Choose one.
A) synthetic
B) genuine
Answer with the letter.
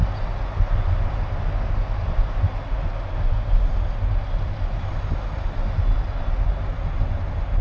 B